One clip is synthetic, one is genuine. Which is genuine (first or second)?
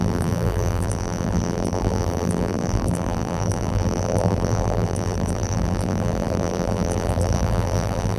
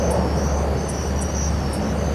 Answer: second